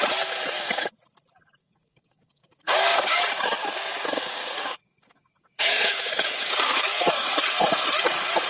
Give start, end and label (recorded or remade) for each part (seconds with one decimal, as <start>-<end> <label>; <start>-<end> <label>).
0.0-1.6 recorded; 1.6-3.2 remade; 3.2-3.6 recorded; 3.6-7.3 remade; 7.3-8.5 recorded